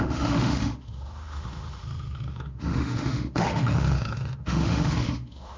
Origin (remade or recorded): remade